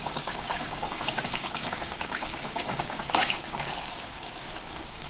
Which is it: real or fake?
fake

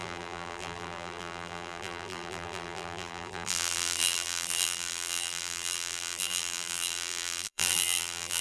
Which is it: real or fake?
fake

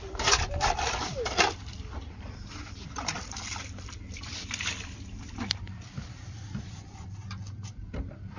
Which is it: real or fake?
fake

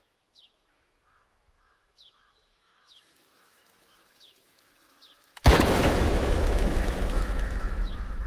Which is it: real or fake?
fake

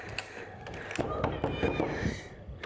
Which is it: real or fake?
real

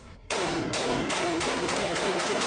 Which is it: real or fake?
fake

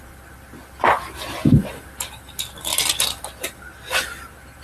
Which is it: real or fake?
real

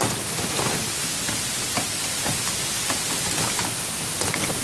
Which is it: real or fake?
real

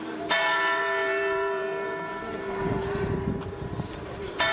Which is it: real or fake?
fake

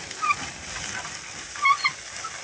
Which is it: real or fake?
real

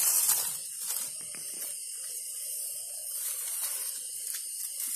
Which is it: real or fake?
fake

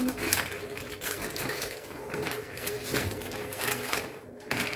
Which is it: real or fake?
fake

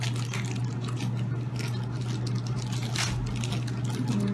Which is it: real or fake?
real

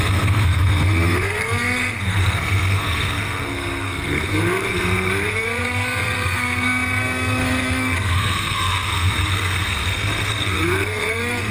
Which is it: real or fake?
fake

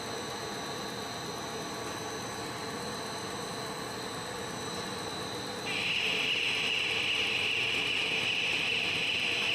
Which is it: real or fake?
real